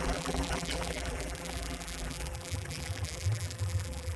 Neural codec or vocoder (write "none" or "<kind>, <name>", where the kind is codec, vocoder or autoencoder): vocoder, BigVGAN v2